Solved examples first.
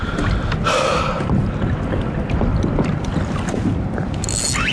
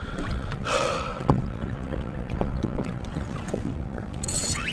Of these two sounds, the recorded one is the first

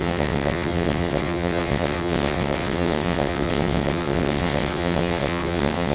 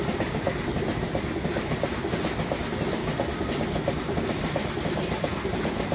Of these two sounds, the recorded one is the second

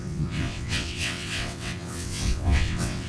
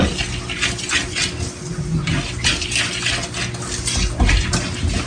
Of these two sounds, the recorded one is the second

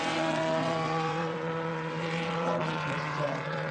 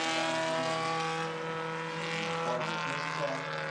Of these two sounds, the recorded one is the second